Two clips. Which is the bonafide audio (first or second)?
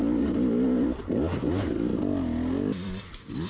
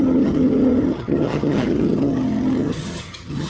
first